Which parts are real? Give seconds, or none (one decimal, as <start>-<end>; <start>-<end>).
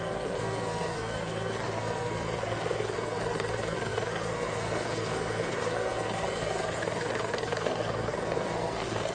none